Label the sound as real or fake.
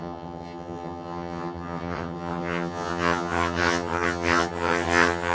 fake